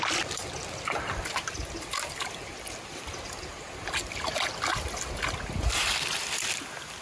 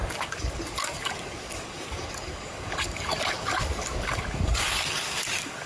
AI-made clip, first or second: second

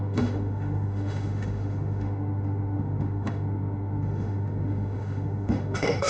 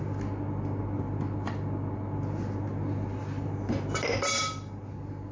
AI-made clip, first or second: first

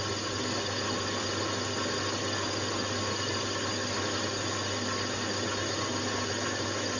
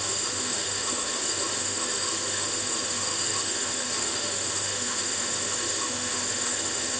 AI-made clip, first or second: second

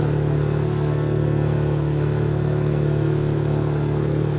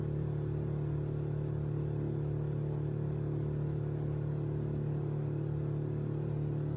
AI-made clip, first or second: first